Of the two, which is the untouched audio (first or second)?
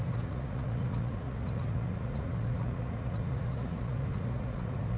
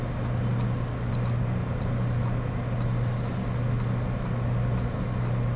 second